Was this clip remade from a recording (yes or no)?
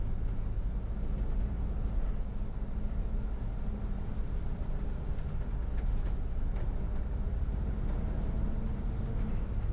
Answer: no